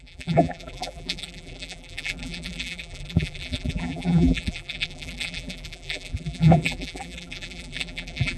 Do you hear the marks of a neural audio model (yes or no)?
yes